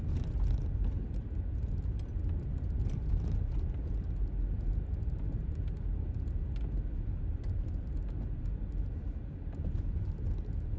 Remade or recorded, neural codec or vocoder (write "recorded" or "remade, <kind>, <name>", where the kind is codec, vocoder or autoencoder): recorded